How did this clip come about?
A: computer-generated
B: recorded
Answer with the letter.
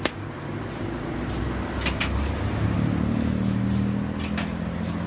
B